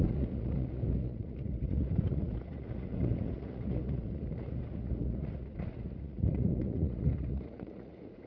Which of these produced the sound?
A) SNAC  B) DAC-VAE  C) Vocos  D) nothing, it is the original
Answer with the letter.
C